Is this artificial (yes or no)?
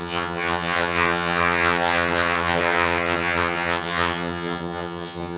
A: yes